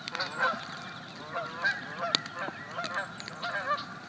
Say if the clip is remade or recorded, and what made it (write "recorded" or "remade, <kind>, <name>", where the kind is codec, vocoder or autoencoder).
recorded